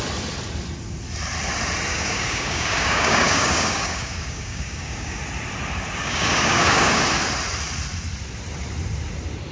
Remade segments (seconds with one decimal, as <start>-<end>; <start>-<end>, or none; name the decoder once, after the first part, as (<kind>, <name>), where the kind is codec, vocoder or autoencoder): 1.9-5.2 (codec, DAC); 6.0-7.0

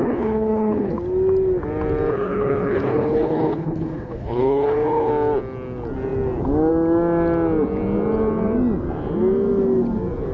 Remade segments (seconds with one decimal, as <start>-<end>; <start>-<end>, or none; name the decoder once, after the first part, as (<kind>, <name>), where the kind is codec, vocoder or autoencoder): 0.0-0.9 (codec, HILCodec); 2.1-5.1

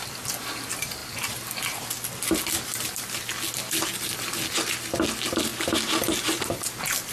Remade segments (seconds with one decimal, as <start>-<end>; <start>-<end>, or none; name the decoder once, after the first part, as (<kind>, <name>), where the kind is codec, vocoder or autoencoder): none

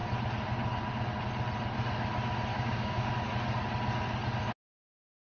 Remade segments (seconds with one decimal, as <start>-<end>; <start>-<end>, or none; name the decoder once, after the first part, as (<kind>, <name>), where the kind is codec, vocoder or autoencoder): 2.5-3.1 (codec, DAC)

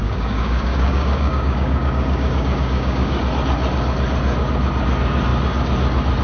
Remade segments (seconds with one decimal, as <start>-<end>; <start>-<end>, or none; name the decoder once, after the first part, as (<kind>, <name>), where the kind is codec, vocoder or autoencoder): 0.0-3.2 (codec, DAC)

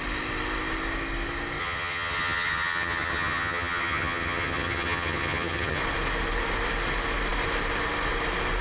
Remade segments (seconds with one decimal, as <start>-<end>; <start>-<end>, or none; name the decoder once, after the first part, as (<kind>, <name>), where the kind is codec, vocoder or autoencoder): 1.6-5.8 (vocoder, HiFi-GAN)